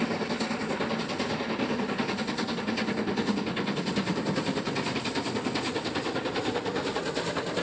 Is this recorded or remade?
recorded